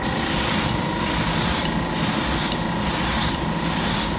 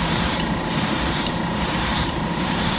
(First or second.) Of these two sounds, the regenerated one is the second